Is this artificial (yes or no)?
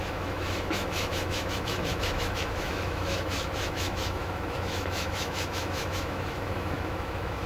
yes